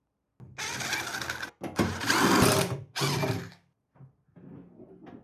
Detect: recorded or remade recorded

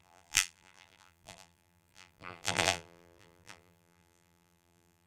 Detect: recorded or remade remade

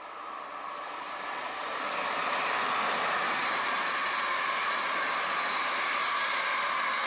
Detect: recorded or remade recorded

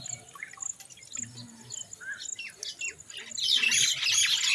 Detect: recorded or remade recorded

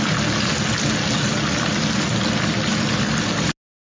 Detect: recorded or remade recorded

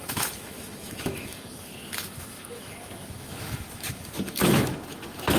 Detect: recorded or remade remade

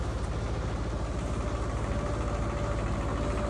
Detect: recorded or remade recorded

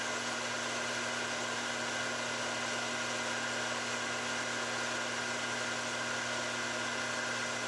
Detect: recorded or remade recorded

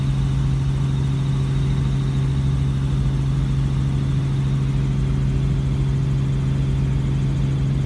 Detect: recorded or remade recorded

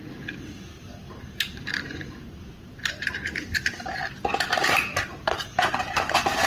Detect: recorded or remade remade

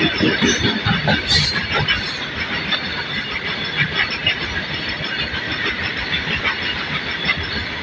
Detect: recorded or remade recorded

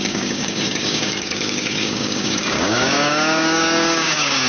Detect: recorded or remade remade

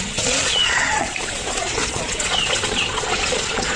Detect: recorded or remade remade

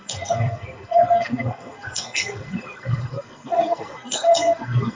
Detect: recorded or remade remade